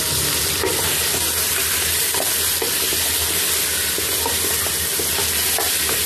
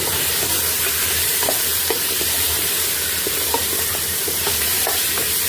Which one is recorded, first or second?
first